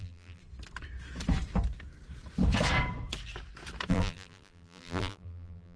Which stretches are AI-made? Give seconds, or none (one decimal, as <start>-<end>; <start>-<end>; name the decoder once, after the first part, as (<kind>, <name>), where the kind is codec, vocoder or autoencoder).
0.0-0.4 (vocoder, BigVGAN v2); 3.9-5.8